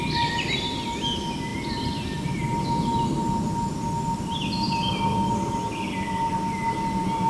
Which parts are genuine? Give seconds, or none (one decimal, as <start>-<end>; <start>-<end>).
0.0-7.3